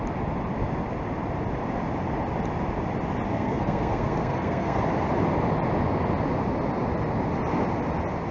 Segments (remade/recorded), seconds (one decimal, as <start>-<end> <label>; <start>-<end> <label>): 0.0-3.3 recorded; 3.3-4.8 remade; 4.8-8.3 recorded

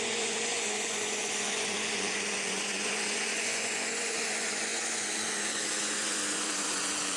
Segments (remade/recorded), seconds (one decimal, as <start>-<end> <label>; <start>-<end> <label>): 0.0-7.2 remade

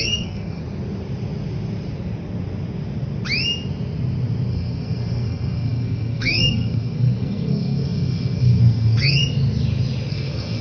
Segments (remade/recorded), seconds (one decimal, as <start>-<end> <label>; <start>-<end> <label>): 0.0-0.6 remade; 0.6-4.5 recorded; 4.5-9.2 remade; 9.2-10.1 recorded; 10.1-10.6 remade

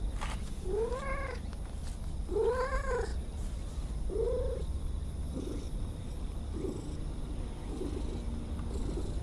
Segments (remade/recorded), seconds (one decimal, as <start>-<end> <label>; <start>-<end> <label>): 0.0-9.2 recorded